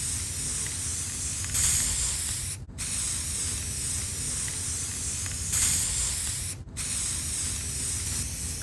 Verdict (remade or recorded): recorded